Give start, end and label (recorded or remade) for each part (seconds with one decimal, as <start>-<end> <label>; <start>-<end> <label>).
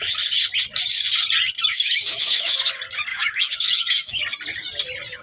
0.0-1.7 recorded; 1.7-2.5 remade; 2.5-3.1 recorded; 3.1-4.2 remade; 4.2-5.2 recorded